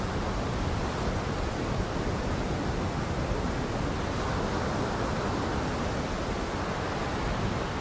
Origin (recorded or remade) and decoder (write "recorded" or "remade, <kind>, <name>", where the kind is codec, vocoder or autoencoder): recorded